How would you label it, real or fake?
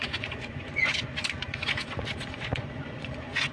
fake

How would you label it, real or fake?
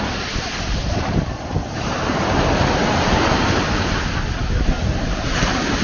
real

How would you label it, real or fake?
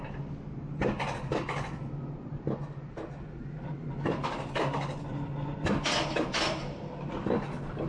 real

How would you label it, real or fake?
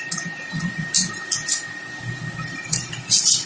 real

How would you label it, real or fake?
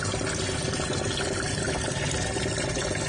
real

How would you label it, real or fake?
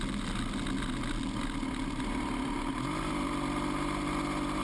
real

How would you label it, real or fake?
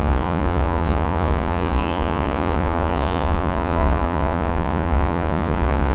fake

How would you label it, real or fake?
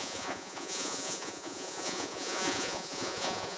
fake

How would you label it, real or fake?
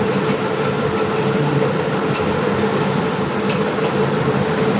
real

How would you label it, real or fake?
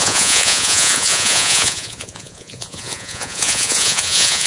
fake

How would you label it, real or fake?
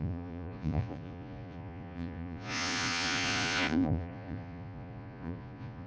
fake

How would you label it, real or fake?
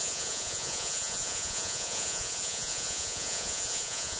fake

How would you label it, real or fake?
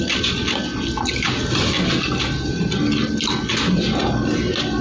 real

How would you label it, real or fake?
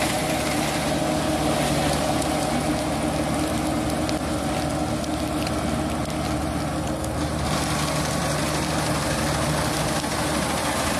real